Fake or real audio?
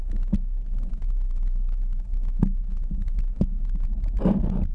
real